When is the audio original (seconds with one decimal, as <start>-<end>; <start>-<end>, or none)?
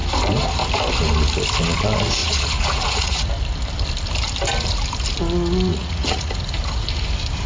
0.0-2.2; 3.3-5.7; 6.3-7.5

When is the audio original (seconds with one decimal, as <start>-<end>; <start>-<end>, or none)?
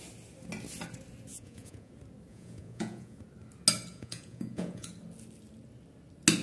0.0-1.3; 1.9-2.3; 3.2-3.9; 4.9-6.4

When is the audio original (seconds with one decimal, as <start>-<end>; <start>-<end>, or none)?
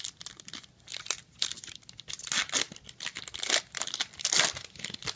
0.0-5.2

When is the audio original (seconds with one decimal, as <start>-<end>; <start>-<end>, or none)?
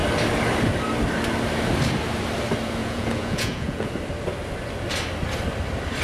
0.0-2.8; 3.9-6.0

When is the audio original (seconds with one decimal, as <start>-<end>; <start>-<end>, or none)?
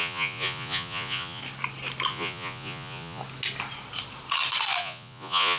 1.4-2.1; 3.2-4.8